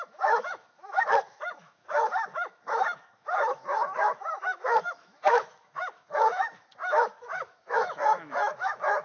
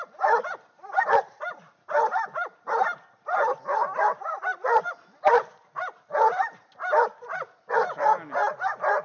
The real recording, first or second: second